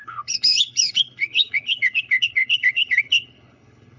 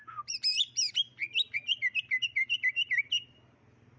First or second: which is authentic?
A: second